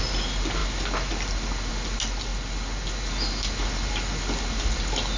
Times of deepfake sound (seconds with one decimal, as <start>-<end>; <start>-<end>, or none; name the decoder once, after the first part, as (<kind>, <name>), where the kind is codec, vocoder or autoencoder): none